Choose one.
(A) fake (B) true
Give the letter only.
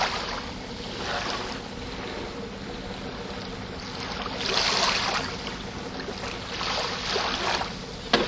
B